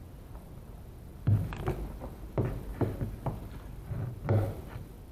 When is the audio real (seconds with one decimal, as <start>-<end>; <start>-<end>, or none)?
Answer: 0.0-5.1